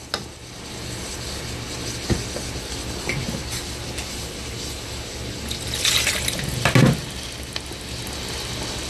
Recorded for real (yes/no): yes